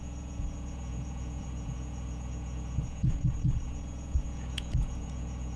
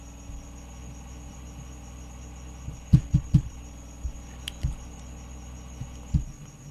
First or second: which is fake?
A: first